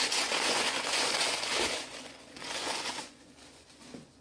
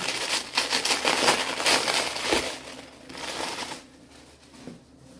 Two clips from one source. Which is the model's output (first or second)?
first